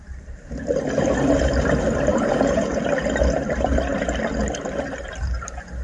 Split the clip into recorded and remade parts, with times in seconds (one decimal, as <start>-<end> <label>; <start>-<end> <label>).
0.0-2.1 recorded; 2.1-2.8 remade; 2.8-5.8 recorded